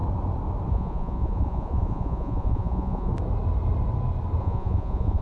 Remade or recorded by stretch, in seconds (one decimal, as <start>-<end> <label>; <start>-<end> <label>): 0.0-0.7 recorded; 0.7-3.1 remade; 3.1-4.4 recorded; 4.4-5.2 remade